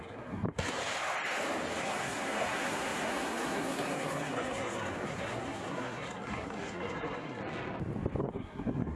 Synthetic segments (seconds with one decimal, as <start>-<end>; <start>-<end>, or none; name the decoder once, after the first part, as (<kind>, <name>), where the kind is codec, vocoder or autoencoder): 0.0-0.8 (codec, SNAC); 1.8-7.4; 8.2-9.0